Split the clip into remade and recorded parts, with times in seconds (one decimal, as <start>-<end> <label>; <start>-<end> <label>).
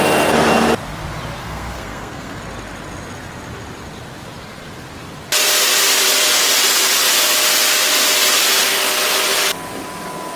0.0-1.4 recorded; 1.4-2.4 remade; 2.4-10.4 recorded